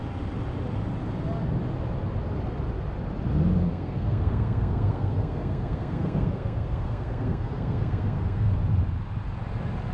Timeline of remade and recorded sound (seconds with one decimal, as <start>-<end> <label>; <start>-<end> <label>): 0.0-3.6 recorded; 3.6-8.5 remade; 8.5-9.9 recorded